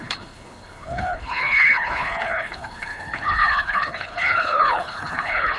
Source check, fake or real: fake